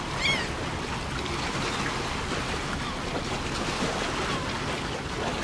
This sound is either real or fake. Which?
real